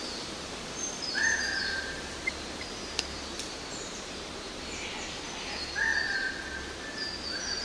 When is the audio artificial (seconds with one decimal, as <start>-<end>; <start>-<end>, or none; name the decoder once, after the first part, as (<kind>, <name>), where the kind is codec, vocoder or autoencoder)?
0.0-5.9 (vocoder, BigVGAN v2); 6.6-7.6